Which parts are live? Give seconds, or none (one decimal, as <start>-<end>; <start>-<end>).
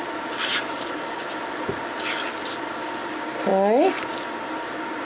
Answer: 0.0-0.5; 1.2-5.0